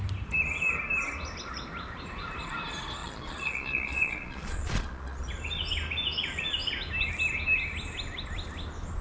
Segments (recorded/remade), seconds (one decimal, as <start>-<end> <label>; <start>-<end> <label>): 0.0-3.0 recorded; 3.0-5.3 remade; 5.3-9.0 recorded

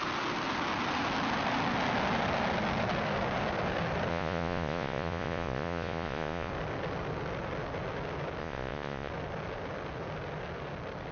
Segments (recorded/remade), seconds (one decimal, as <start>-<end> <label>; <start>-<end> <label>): 0.0-4.1 recorded; 4.1-6.5 remade; 6.5-8.4 recorded; 8.4-9.1 remade; 9.1-11.1 recorded

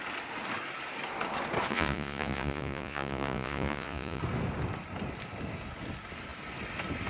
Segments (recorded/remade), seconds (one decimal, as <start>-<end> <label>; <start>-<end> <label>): 0.0-1.7 recorded; 1.7-4.2 remade; 4.2-7.1 recorded

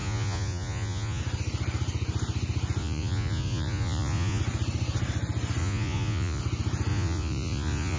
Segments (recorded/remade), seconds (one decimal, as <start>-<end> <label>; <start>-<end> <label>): 0.0-1.2 remade; 1.2-2.8 recorded; 2.8-4.4 remade; 4.4-5.6 recorded; 5.6-6.4 remade; 6.4-6.9 recorded; 6.9-8.0 remade

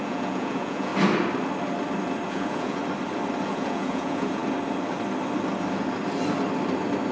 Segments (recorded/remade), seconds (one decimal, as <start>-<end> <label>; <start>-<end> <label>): 0.0-0.9 remade; 0.9-2.3 recorded; 2.3-2.8 remade; 2.8-3.4 recorded; 3.4-4.4 remade; 4.4-7.1 recorded

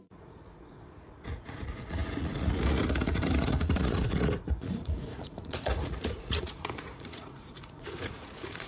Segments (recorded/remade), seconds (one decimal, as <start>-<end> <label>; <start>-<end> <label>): 0.0-8.7 remade

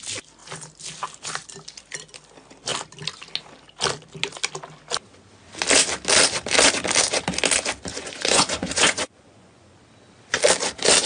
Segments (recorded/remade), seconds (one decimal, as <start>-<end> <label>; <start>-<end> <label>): 0.0-7.9 recorded; 7.9-9.8 remade; 9.8-11.1 recorded